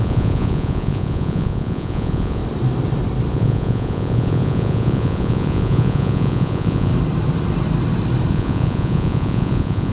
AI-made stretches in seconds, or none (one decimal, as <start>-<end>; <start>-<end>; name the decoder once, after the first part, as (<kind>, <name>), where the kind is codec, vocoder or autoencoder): 0.0-2.4 (vocoder, Vocos); 3.3-6.9; 8.3-9.9